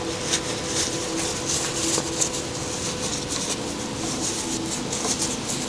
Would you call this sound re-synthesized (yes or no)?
no